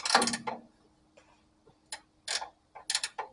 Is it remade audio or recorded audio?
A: recorded